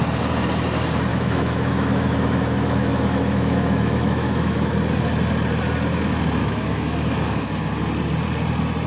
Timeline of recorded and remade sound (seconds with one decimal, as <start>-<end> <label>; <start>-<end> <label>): 0.0-1.1 recorded; 1.1-4.7 remade; 4.7-6.4 recorded; 6.4-7.5 remade; 7.5-8.9 recorded